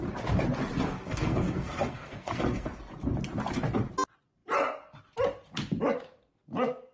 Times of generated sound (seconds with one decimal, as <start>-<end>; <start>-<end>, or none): 0.9-2.8